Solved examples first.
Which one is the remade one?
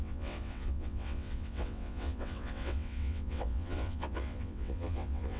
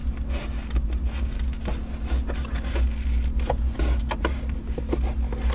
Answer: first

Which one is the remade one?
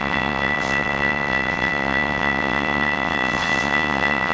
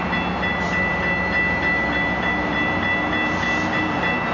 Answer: first